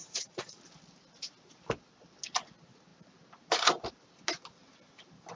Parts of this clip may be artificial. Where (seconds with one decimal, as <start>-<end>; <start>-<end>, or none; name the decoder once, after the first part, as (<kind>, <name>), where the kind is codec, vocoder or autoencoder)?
0.0-0.6 (vocoder, Vocos)